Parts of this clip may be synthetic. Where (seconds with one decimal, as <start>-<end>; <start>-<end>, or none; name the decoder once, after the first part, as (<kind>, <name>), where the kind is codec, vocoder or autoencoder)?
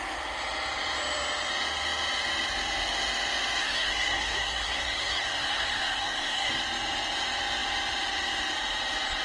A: 3.6-6.5 (codec, SNAC)